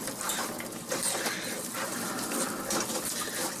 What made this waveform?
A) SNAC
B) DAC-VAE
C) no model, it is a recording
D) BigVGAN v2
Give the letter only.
D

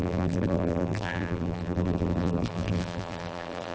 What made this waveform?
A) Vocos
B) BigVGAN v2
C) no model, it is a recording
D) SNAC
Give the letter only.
B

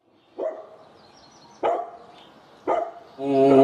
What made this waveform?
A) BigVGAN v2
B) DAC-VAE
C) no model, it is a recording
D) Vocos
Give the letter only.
C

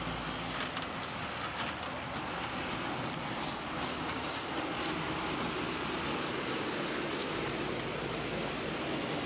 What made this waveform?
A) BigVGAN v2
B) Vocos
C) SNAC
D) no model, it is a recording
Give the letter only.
D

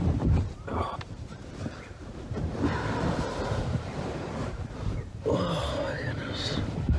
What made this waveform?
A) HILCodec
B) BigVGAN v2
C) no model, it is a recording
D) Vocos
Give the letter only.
B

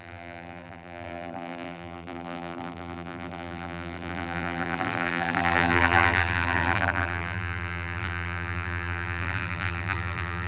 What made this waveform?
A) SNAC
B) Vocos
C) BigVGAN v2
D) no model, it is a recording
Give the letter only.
C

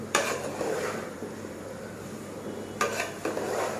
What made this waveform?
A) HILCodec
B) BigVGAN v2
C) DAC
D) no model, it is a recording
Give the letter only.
B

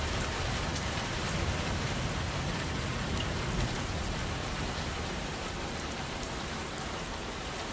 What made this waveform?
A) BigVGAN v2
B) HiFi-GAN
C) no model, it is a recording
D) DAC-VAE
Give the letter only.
A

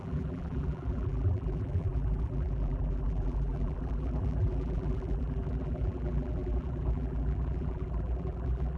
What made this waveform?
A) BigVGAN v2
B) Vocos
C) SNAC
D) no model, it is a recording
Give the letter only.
A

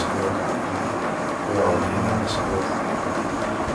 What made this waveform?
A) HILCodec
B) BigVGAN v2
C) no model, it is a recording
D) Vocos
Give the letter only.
C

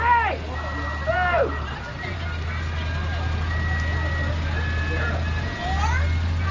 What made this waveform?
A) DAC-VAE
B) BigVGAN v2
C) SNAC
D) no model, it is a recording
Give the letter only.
D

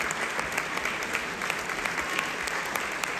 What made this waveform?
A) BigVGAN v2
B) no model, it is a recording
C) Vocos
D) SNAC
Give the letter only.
B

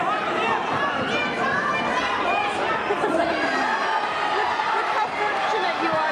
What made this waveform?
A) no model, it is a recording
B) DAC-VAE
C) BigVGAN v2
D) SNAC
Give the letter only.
C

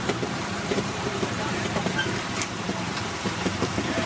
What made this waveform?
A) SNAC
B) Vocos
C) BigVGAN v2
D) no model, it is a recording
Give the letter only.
C